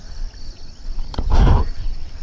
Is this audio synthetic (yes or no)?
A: no